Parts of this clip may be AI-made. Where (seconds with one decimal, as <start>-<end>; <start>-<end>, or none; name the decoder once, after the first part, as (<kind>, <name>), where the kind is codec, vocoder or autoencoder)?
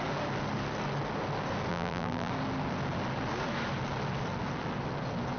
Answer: 1.7-2.3 (vocoder, BigVGAN v2)